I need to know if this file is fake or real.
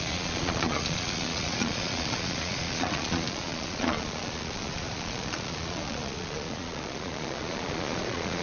fake